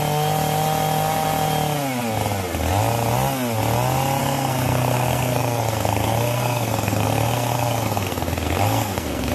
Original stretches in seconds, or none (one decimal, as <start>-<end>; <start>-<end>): 0.0-4.2